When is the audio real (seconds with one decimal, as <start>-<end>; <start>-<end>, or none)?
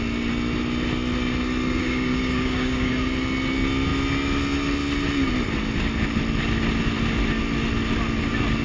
0.0-1.8; 2.9-8.6